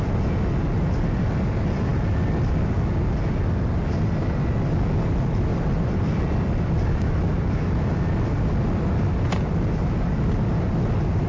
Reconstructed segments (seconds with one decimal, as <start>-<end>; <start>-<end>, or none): 5.5-7.2